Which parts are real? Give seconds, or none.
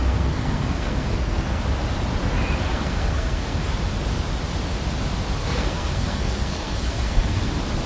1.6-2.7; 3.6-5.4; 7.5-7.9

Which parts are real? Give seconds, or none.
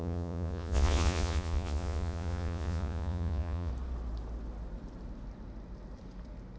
3.7-6.6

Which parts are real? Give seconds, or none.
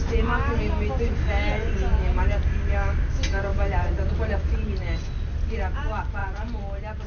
0.0-3.5; 4.1-6.2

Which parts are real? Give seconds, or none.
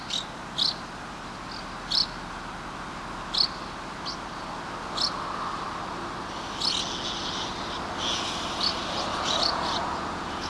0.0-9.1